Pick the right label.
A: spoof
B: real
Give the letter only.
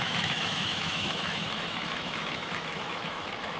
A